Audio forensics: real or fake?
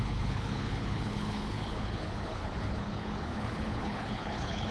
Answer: fake